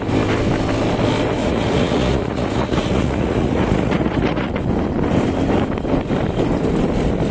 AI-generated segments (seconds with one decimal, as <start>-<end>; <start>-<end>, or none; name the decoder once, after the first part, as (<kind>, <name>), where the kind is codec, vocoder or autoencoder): 1.4-4.5 (vocoder, Vocos)